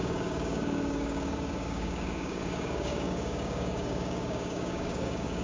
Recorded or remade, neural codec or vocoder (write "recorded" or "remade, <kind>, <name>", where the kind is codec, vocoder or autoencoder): remade, codec, DAC